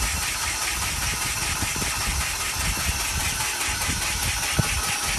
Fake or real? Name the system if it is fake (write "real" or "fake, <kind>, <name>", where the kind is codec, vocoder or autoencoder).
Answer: real